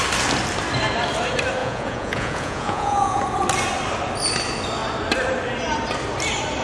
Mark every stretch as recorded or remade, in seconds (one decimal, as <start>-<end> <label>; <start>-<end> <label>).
0.0-1.6 recorded; 1.6-3.2 remade; 3.2-6.6 recorded